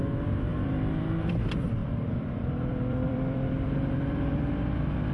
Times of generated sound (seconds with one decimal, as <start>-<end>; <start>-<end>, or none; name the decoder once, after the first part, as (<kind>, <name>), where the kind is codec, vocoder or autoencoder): 0.5-1.3 (vocoder, BigVGAN v2); 1.8-4.5